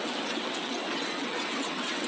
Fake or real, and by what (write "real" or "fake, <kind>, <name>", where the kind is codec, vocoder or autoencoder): fake, vocoder, WaveNeXt